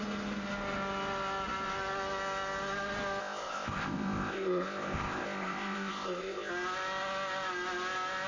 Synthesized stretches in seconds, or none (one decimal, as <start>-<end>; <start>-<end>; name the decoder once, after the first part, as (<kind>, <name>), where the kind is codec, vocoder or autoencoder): 3.2-6.5 (codec, ZipCodec)